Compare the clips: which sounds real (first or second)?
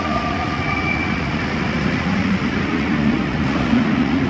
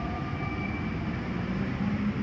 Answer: second